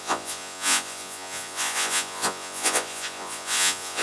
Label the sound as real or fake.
fake